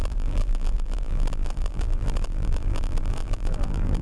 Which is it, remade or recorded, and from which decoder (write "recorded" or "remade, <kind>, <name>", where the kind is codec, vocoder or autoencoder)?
remade, vocoder, BigVGAN v2